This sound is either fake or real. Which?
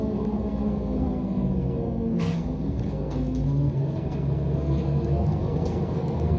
fake